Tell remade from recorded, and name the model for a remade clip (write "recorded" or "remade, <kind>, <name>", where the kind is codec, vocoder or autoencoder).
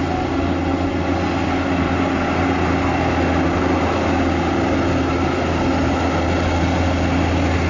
recorded